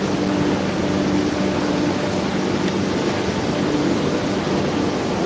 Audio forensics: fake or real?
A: real